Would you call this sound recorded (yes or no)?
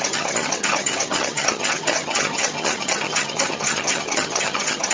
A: no